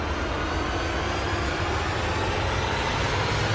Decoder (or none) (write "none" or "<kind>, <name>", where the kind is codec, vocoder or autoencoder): none